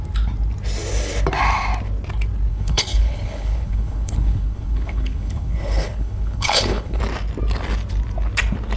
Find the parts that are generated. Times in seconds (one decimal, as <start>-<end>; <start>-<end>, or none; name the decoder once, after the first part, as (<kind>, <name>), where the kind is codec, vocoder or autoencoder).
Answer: 2.5-7.0 (codec, HILCodec)